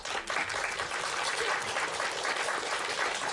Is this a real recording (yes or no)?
no